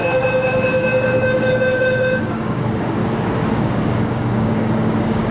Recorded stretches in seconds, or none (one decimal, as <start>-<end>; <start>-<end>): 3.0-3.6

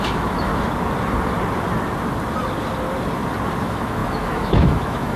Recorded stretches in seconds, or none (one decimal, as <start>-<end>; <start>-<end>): 0.5-3.6

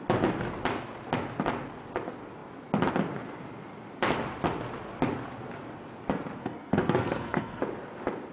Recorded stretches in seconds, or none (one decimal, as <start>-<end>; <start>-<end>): 0.0-6.4; 7.6-8.3

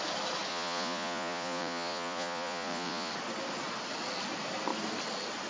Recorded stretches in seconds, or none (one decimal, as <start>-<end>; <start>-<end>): 0.0-0.5; 3.1-5.5

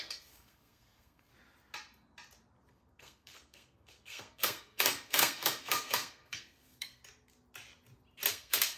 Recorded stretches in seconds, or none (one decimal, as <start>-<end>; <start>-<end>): 1.3-2.7; 7.0-8.3